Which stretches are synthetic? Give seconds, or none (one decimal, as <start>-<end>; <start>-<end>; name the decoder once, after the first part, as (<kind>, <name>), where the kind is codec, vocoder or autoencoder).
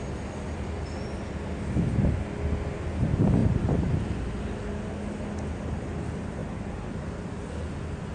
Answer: none